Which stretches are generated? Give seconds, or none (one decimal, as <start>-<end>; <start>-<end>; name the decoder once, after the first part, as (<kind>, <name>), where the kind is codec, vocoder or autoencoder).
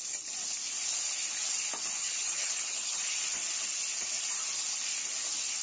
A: 2.0-3.1 (vocoder, HiFi-GAN)